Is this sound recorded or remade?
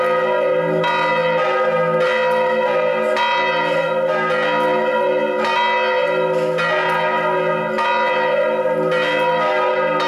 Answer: recorded